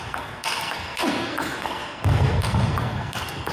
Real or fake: fake